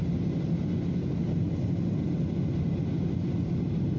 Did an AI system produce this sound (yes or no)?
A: no